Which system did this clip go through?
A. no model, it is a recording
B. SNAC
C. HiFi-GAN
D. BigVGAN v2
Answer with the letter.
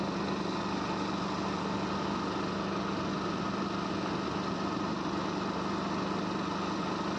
A